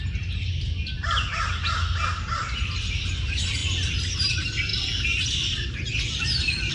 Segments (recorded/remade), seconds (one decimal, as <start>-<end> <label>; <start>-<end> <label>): 0.0-6.7 recorded